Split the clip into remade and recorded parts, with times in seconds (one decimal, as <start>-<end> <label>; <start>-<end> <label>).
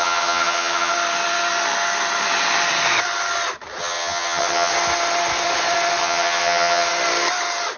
0.0-0.9 remade; 0.9-3.8 recorded; 3.8-4.7 remade; 4.7-6.0 recorded; 6.0-6.9 remade; 6.9-7.8 recorded